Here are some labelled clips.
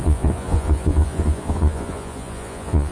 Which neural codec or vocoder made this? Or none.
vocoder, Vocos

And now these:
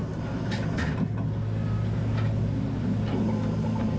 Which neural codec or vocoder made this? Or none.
none